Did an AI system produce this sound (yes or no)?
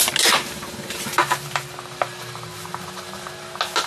no